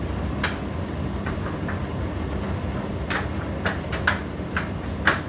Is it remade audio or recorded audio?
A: recorded